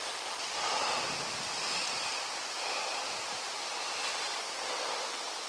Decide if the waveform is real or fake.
real